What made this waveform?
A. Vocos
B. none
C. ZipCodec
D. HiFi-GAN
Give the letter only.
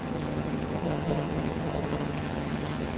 D